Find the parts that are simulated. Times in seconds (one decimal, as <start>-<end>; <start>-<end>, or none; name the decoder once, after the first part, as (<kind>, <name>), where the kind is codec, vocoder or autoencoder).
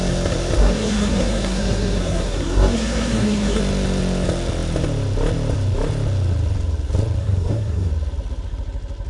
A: 0.6-3.6 (codec, SNAC); 7.2-7.9